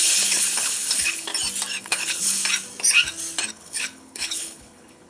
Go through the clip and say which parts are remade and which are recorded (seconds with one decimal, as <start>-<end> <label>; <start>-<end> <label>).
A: 0.0-1.3 remade; 1.3-1.8 recorded; 1.8-2.4 remade; 2.4-3.5 recorded; 3.5-5.1 remade